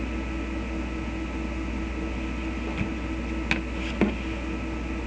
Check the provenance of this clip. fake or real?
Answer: real